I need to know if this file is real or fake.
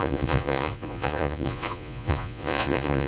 fake